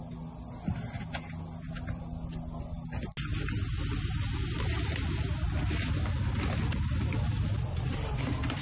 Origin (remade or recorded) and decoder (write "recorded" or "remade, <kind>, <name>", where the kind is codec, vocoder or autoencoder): recorded